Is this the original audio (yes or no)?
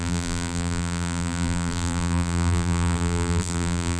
no